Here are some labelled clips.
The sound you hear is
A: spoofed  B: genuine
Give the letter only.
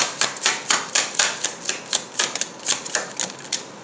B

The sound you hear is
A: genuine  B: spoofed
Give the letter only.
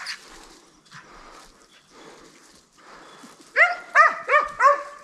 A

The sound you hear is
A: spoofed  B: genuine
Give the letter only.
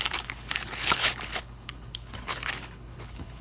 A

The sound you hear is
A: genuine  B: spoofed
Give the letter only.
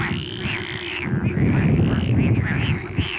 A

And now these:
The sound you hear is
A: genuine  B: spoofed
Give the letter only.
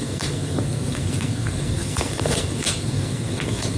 B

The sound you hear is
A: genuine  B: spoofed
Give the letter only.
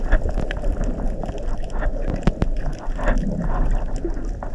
A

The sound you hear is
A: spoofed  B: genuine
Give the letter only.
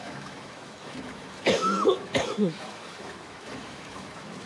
A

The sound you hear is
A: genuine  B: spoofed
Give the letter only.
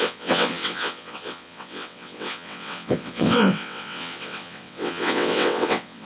B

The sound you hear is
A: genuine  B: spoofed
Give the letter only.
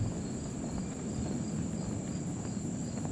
A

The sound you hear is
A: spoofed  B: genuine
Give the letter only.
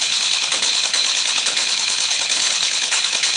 A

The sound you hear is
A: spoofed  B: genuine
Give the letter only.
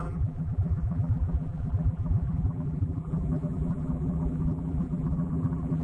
A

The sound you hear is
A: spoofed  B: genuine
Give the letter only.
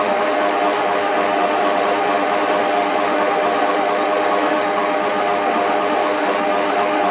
A